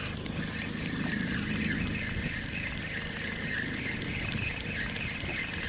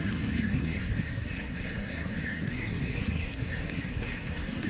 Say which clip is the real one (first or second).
first